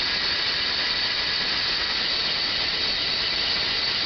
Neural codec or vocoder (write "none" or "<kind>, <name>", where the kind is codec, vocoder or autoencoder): none